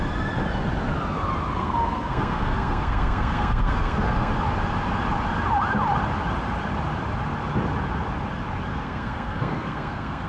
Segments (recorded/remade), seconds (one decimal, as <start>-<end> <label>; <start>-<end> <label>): 0.0-1.6 recorded; 1.6-4.3 remade; 4.3-8.7 recorded; 8.7-10.3 remade